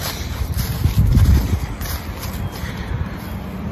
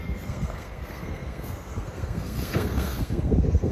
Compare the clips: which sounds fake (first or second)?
second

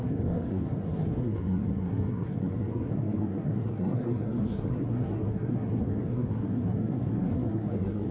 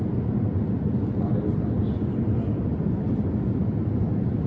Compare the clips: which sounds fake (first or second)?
first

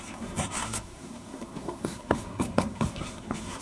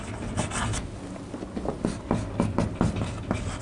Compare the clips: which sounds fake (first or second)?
first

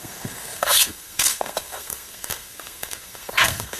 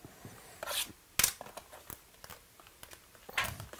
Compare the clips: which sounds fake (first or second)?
first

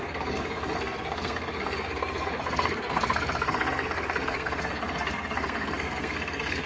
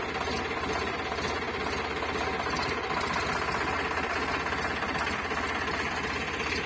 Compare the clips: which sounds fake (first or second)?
first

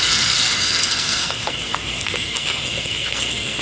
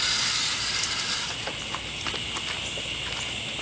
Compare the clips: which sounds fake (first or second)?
first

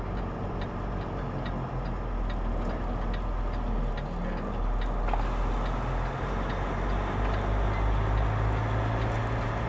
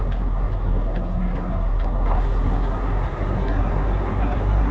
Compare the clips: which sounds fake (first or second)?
second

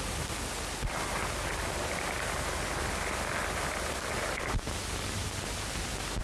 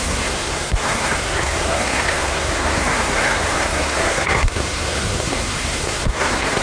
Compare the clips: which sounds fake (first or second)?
second